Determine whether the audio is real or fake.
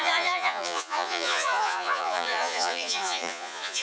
fake